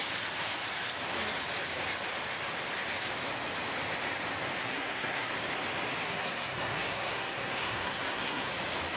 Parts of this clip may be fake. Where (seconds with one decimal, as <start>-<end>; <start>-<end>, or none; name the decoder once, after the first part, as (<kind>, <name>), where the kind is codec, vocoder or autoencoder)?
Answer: 4.6-5.3 (codec, SNAC); 6.0-8.5